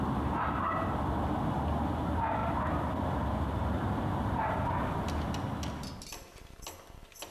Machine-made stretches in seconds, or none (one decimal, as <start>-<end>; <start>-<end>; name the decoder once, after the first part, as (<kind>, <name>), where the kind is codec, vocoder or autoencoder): 3.6-4.7 (vocoder, BigVGAN v2)